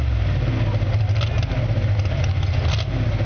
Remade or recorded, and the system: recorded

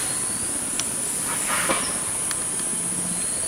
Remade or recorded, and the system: recorded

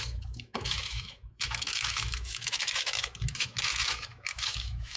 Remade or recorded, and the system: remade, autoencoder, DAC-VAE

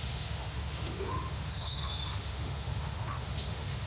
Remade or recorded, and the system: remade, autoencoder, DAC-VAE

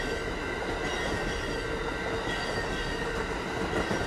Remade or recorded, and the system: recorded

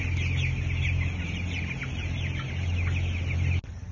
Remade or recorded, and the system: recorded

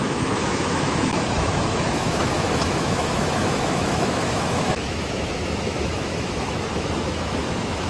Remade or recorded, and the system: remade, autoencoder, DAC-VAE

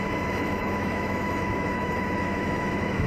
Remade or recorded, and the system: remade, autoencoder, DAC-VAE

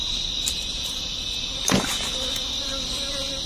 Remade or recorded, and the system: recorded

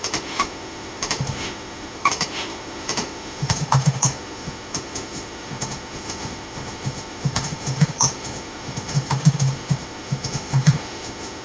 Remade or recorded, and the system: remade, autoencoder, DAC-VAE